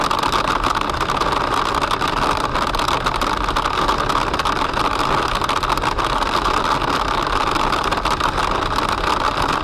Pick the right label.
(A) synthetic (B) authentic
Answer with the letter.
B